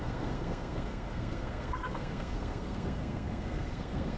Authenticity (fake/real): fake